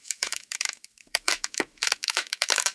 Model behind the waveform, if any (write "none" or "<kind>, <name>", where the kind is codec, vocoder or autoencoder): autoencoder, DAC-VAE